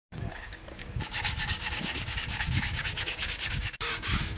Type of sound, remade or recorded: remade